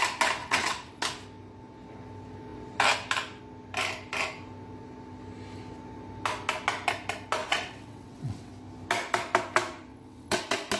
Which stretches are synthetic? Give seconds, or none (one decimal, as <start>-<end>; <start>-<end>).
0.4-1.0; 7.4-8.5; 9.9-10.4

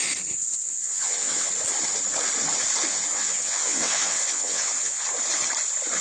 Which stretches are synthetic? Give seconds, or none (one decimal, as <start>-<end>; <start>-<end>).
0.4-1.5; 2.9-5.0

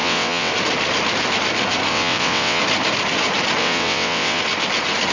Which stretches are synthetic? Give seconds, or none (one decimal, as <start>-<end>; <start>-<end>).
0.0-0.5; 1.9-2.6; 3.6-4.4

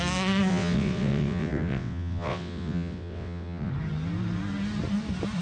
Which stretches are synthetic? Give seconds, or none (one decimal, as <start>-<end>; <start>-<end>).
0.5-3.7

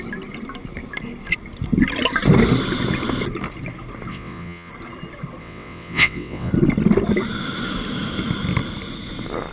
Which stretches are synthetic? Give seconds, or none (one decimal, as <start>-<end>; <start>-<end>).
4.1-4.7; 5.4-6.5